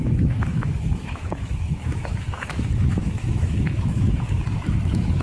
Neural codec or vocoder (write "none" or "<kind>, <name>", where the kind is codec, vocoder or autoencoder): autoencoder, DAC-VAE